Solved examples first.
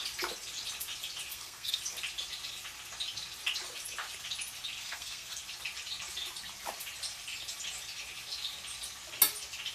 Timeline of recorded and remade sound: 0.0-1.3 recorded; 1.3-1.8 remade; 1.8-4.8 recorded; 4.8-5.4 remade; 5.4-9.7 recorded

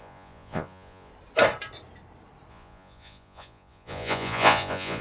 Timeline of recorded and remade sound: 0.0-1.1 remade; 1.1-2.5 recorded; 2.5-5.0 remade

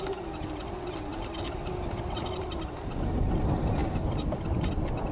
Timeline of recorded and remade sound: 0.0-5.1 recorded